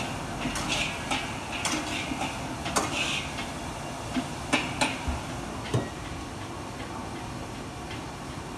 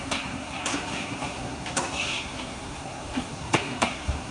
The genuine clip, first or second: first